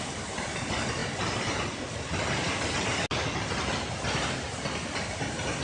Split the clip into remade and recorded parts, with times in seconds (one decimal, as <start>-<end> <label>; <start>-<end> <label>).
0.0-5.6 recorded